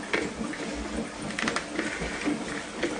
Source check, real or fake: real